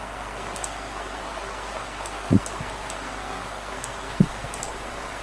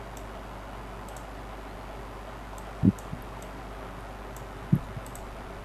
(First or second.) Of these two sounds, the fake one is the first